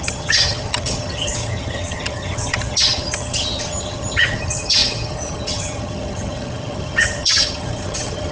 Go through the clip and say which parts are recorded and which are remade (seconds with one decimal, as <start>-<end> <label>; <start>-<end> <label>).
0.0-8.3 remade